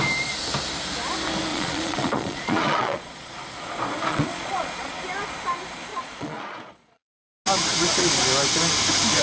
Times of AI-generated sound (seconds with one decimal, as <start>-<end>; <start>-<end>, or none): 1.5-3.3; 4.1-5.0; 5.9-7.1